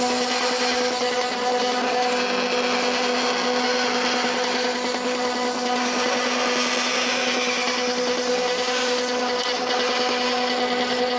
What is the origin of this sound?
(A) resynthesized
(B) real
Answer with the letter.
B